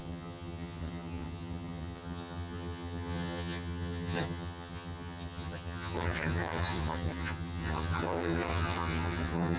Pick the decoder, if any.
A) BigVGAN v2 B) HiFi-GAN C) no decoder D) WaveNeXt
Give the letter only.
B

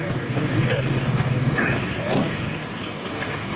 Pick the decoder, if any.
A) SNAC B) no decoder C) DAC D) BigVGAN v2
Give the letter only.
C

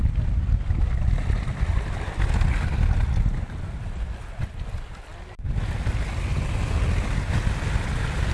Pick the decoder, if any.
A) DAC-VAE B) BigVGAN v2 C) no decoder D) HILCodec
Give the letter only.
C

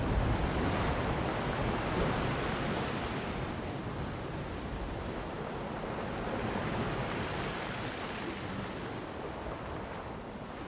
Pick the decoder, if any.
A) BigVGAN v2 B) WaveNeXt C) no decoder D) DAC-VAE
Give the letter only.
A